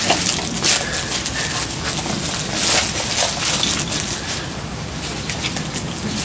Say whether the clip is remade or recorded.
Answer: recorded